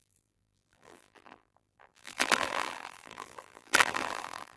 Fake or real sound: fake